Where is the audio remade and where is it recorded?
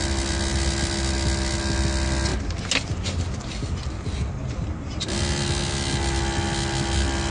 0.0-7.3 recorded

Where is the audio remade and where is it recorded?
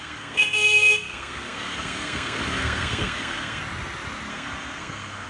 0.0-3.6 remade; 3.6-4.3 recorded; 4.3-5.3 remade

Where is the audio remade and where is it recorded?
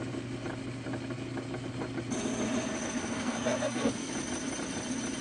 0.0-3.0 recorded; 3.0-4.1 remade; 4.1-5.2 recorded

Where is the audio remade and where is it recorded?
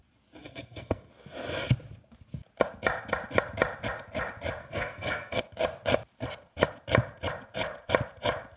0.0-0.4 recorded; 0.4-1.1 remade; 1.1-4.6 recorded; 4.6-5.4 remade; 5.4-8.6 recorded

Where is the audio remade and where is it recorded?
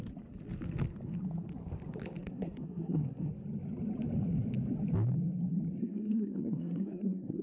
0.0-2.2 recorded; 2.2-3.3 remade; 3.3-5.8 recorded; 5.8-7.4 remade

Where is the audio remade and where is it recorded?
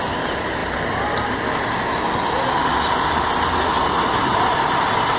0.0-5.2 recorded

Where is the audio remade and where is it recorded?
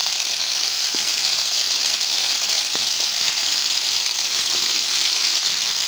0.0-5.9 remade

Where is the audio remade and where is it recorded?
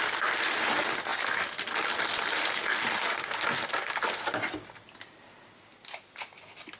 0.0-6.8 recorded